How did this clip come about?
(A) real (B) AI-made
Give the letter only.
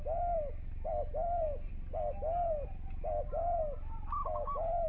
A